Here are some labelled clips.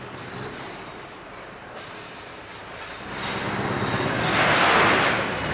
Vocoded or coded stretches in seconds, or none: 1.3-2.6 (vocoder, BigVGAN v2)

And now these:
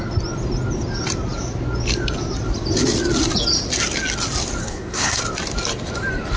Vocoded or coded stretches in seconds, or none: 4.6-5.2 (codec, SNAC)

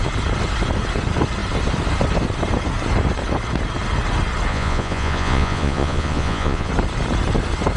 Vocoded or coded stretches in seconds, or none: 4.5-6.7 (vocoder, Vocos)

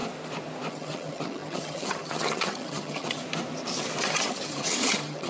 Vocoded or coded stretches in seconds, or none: 0.7-3.2 (vocoder, HiFi-GAN); 4.0-5.3

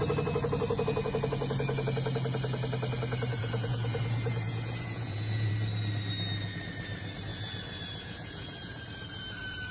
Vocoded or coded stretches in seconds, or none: 3.4-5.5 (vocoder, Vocos); 7.3-8.8

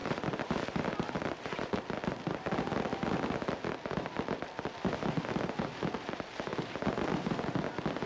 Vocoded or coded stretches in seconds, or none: 0.0-1.7 (vocoder, BigVGAN v2)

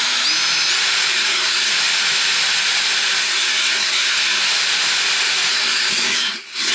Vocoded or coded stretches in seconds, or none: 1.1-1.7 (codec, SNAC); 3.2-4.4; 5.5-6.7

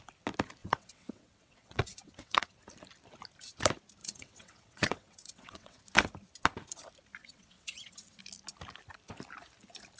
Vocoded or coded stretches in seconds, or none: 0.6-2.5 (vocoder, WaveNeXt); 4.0-5.8; 7.2-8.2